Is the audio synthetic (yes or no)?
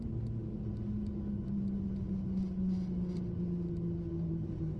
no